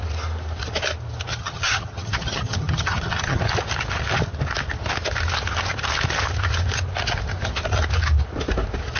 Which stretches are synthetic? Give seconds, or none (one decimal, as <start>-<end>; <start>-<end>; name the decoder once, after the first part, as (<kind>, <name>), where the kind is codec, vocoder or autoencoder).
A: 1.3-3.4 (vocoder, HiFi-GAN)